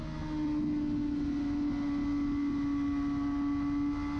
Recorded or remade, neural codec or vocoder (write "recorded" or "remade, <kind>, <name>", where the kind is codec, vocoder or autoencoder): recorded